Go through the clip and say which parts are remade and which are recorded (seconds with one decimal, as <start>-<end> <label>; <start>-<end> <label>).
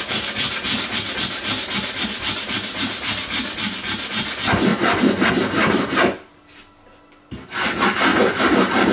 0.0-8.9 recorded